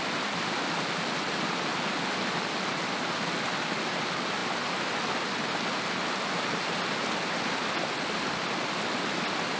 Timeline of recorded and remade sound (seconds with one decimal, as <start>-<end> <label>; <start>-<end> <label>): 0.0-9.6 recorded